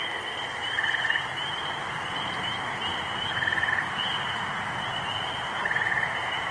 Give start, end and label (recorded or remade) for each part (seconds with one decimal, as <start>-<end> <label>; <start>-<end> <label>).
0.0-6.5 recorded